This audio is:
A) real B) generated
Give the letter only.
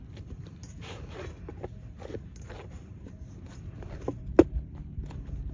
A